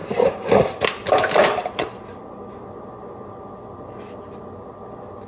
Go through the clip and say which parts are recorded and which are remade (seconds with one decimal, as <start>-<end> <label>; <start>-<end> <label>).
0.0-0.8 remade; 0.8-5.3 recorded